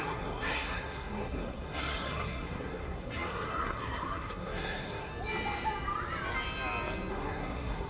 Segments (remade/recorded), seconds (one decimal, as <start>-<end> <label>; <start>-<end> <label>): 0.0-5.1 remade; 5.1-7.1 recorded; 7.1-7.9 remade